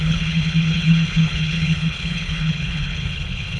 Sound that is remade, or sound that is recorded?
remade